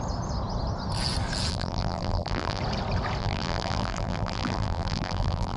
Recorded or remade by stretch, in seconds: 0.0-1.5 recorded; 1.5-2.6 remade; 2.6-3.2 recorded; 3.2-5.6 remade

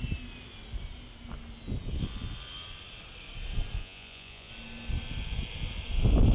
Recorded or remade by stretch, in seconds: 0.0-3.8 recorded; 3.8-4.5 remade; 4.5-6.3 recorded

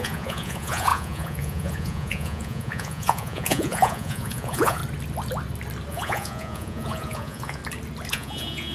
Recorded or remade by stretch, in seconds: 0.0-4.8 remade; 4.8-5.9 recorded; 5.9-7.6 remade; 7.6-8.1 recorded; 8.1-8.7 remade

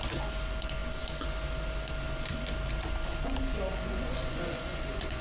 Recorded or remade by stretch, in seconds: 0.0-3.7 recorded; 3.7-5.2 remade

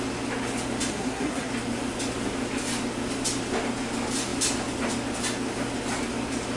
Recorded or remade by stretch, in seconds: 0.0-0.9 recorded; 0.9-1.5 remade; 1.5-6.6 recorded